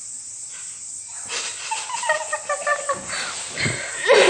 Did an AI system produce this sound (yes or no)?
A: no